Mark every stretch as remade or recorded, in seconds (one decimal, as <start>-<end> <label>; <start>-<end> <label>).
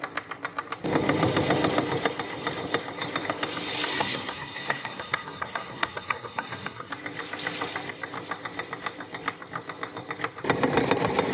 0.0-3.9 recorded; 3.9-6.9 remade; 6.9-11.3 recorded